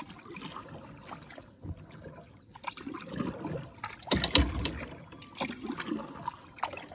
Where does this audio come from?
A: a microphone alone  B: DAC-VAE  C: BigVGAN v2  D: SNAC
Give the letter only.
A